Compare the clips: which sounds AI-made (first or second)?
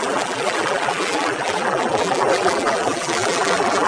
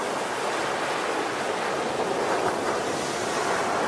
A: first